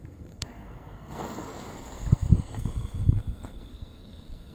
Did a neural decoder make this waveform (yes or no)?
yes